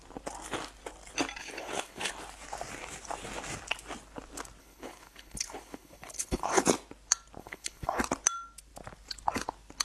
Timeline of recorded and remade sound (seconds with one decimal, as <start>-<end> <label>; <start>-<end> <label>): 0.0-1.4 recorded; 1.4-2.1 remade; 2.1-4.6 recorded; 4.6-6.6 remade; 6.6-7.4 recorded; 7.4-8.0 remade; 8.0-9.8 recorded